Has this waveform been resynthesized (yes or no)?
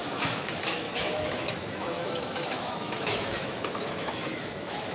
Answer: yes